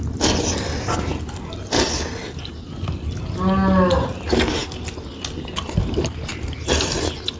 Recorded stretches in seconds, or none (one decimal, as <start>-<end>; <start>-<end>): 0.0-7.4